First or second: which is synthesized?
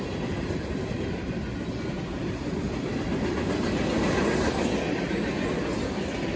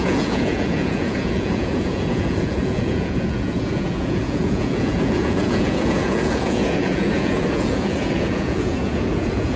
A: second